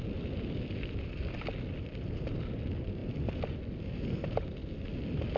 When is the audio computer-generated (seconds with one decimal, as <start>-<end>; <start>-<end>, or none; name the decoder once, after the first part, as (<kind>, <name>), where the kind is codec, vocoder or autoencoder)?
none